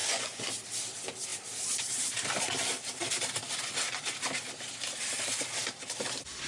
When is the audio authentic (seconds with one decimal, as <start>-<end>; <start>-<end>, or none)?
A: 0.5-6.5